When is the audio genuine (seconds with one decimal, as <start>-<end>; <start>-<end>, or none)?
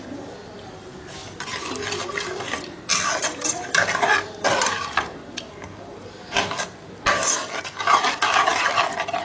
0.0-9.2